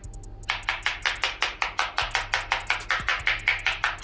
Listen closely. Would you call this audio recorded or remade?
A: recorded